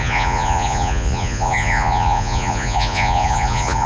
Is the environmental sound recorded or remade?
remade